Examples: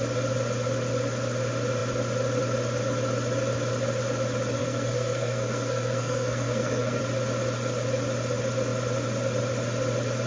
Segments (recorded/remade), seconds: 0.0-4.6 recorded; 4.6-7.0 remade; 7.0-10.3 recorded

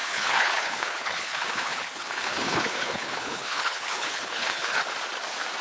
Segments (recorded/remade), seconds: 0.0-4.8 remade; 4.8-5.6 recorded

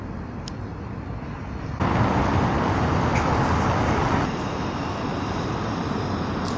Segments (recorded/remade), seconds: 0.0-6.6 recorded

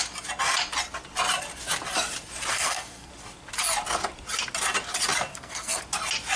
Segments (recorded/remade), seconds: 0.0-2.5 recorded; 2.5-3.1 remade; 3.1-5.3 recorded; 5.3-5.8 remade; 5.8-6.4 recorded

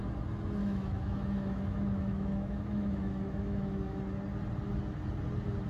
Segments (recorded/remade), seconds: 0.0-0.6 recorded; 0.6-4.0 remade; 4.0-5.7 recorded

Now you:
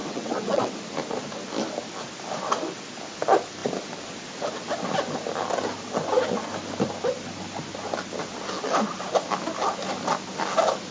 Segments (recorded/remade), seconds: 0.0-0.7 remade; 0.7-10.9 recorded